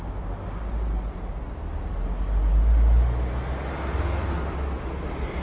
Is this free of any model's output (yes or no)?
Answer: yes